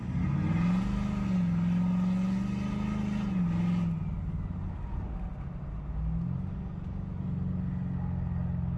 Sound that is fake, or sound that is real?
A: real